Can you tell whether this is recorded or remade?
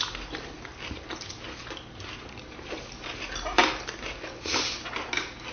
recorded